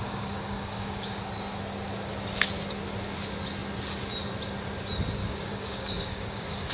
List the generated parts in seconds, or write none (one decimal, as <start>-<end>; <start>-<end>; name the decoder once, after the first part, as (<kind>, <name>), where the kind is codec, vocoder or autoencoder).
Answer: 0.0-1.2 (codec, DAC); 5.2-6.7